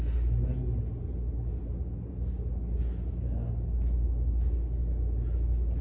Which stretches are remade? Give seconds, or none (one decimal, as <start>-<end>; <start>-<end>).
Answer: none